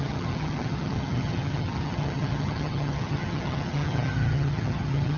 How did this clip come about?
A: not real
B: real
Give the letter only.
A